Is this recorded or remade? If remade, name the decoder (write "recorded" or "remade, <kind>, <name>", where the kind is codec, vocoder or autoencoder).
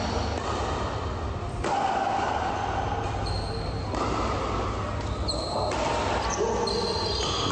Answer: recorded